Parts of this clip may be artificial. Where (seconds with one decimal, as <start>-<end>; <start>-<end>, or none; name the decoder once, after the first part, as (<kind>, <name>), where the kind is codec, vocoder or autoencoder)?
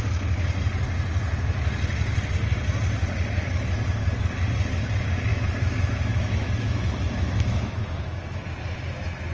5.3-8.4 (autoencoder, DAC-VAE)